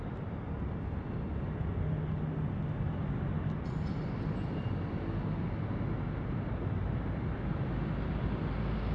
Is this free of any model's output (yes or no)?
yes